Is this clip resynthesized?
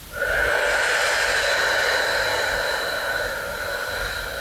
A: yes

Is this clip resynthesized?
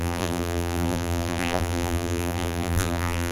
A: yes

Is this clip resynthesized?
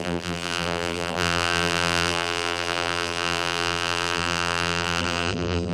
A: yes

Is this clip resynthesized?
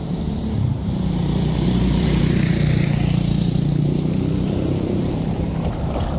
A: yes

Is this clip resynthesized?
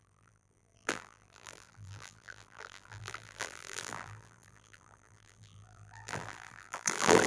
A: yes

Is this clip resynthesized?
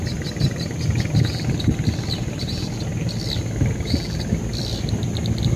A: no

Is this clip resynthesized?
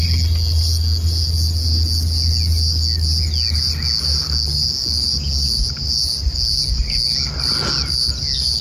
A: no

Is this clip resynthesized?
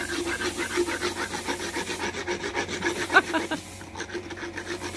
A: no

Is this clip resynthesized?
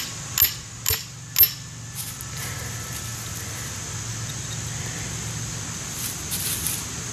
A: no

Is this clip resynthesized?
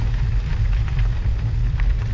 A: no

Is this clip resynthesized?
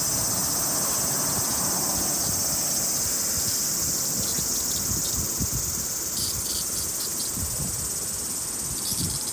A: no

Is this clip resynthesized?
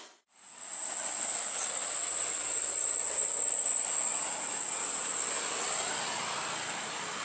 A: no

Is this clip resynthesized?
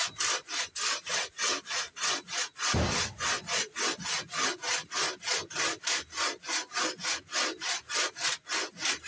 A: no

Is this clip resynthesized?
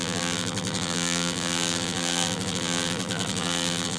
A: yes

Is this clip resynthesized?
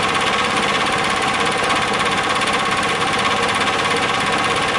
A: yes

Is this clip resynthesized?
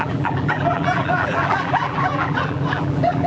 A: yes